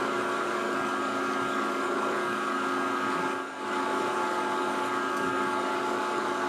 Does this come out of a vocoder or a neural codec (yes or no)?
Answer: yes